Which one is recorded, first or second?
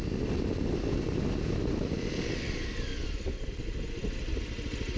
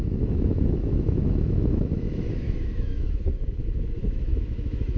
first